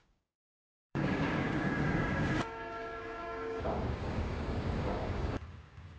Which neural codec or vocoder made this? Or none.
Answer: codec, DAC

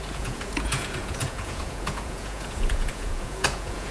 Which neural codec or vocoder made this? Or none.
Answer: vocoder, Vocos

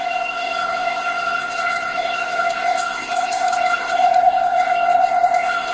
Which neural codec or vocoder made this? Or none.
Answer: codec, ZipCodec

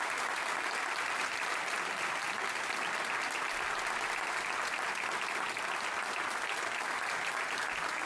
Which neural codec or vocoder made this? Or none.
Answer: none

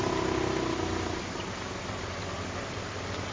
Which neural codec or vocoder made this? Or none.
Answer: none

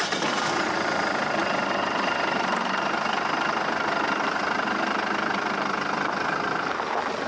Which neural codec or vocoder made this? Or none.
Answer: none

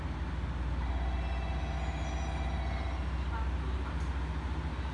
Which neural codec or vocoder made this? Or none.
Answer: none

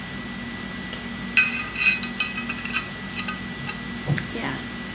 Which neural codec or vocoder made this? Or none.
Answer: none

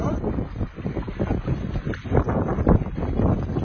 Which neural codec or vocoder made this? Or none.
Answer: none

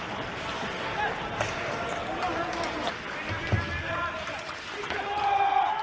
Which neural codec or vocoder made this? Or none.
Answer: none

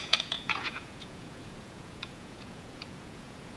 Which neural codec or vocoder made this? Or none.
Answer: vocoder, Vocos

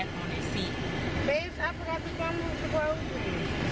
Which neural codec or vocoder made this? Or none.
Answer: none